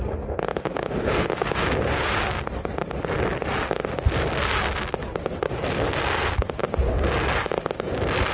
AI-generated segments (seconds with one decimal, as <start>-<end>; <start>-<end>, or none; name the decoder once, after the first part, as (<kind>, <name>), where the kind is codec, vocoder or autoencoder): 0.5-2.4 (codec, DAC)